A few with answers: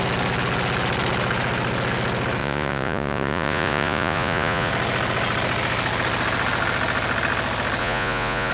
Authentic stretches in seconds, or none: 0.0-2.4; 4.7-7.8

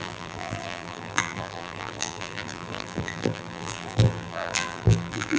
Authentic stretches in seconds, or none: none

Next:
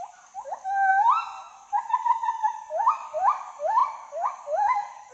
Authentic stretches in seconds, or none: 0.9-1.4